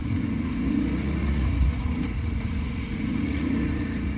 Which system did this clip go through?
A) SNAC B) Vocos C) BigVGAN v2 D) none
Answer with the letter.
B